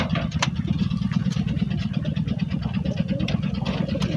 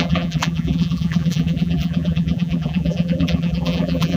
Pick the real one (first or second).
first